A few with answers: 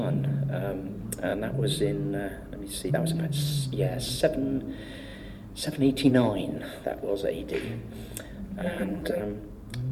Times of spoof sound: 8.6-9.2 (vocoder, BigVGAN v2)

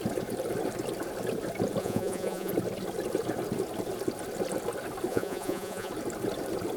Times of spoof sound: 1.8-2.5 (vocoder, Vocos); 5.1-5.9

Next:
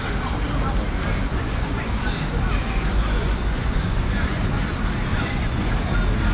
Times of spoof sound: 1.3-2.1 (vocoder, Vocos); 2.6-4.4; 5.1-5.7

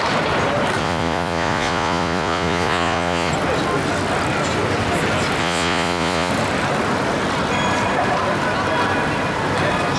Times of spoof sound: 0.8-3.3 (vocoder, Vocos); 5.4-6.3

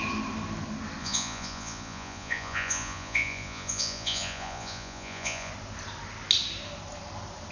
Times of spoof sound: 1.0-5.5 (vocoder, Vocos)

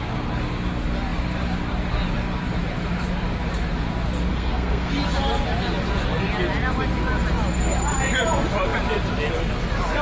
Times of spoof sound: 4.3-4.9 (codec, SNAC)

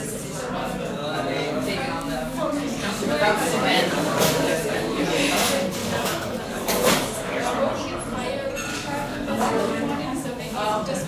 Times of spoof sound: 0.6-5.0 (codec, DAC); 5.8-7.4; 8.7-10.4